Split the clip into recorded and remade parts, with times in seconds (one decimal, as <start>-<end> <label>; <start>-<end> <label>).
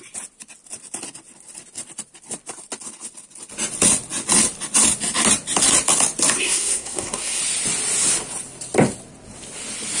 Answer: 0.0-6.4 recorded; 6.4-7.4 remade; 7.4-10.0 recorded